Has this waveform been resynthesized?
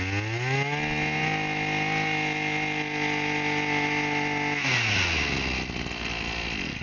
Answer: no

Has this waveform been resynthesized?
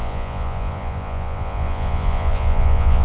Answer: yes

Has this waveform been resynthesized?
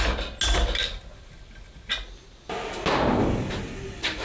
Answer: no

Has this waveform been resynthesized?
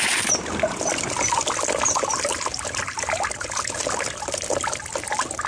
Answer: no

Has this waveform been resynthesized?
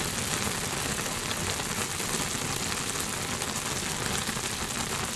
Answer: no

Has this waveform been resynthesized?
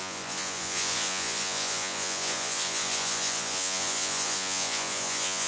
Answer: yes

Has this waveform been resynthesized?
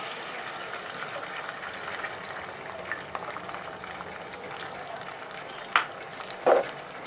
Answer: no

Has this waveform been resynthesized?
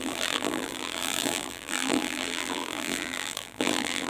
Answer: yes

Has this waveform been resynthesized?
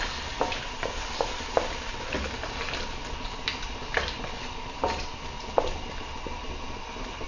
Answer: no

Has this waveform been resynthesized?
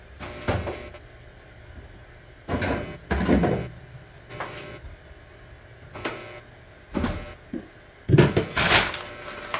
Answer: no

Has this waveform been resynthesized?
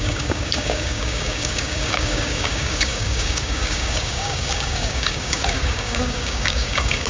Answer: yes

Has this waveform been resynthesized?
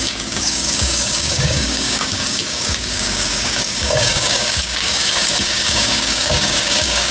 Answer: yes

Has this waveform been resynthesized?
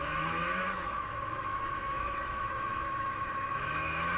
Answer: yes